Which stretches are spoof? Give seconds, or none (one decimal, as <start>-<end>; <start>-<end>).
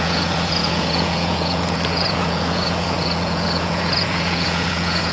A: 0.0-5.1